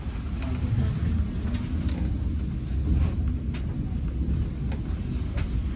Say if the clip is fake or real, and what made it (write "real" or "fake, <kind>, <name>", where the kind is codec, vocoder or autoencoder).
real